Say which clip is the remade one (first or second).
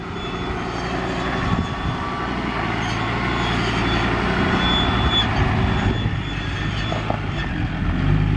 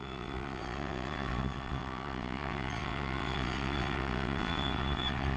second